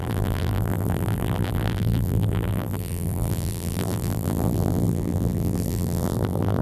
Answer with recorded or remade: remade